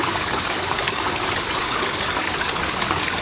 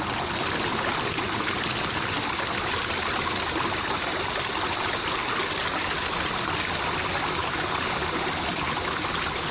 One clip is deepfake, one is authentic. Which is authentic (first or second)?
second